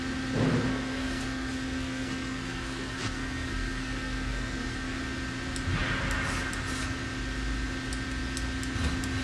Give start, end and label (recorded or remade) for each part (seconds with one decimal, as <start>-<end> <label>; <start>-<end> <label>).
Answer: 0.0-0.7 recorded; 0.7-5.0 remade; 5.0-9.2 recorded